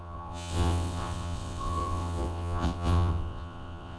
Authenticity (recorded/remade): remade